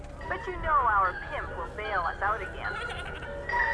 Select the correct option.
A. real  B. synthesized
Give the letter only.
A